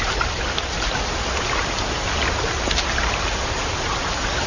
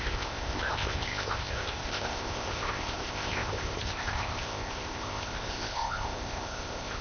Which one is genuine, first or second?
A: first